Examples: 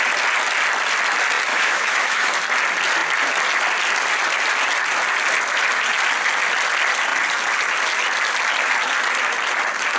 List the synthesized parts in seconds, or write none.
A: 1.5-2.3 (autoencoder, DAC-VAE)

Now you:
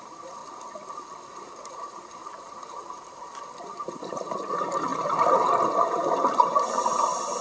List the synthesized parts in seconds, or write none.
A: 0.0-0.4 (vocoder, BigVGAN v2); 1.7-7.4

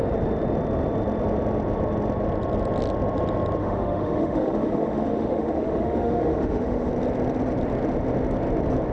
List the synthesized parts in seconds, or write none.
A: 3.6-6.9 (autoencoder, DAC-VAE)

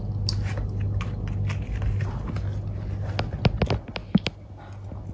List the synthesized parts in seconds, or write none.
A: none

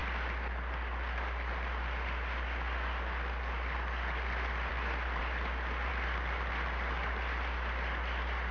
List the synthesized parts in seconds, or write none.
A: none

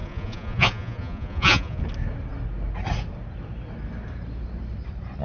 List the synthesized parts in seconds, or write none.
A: 0.0-1.8 (vocoder, Vocos)

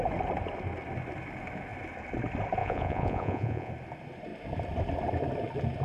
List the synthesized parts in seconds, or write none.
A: 2.6-3.7 (vocoder, Vocos)

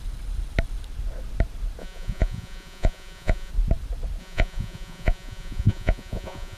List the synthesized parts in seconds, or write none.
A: 1.8-3.5 (vocoder, Vocos); 4.2-6.6